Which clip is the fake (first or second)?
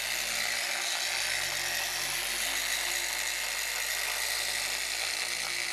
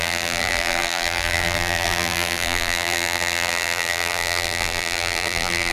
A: second